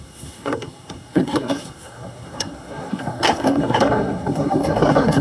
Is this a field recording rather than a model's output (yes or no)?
no